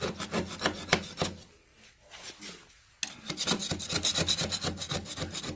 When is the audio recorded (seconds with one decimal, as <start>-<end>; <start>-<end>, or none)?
0.0-5.6